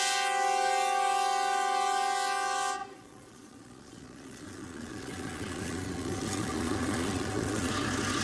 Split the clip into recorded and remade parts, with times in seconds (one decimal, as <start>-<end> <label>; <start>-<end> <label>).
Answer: 0.0-2.8 recorded; 2.8-7.7 remade; 7.7-8.2 recorded